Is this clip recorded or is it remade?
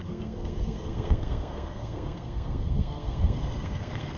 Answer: remade